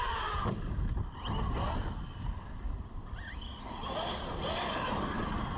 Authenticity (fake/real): real